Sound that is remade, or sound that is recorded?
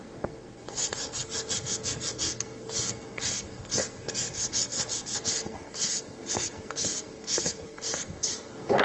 remade